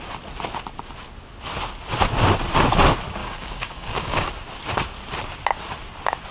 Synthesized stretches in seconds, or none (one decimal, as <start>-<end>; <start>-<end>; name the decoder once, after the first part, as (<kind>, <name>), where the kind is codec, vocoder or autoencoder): 3.2-4.3 (codec, DAC)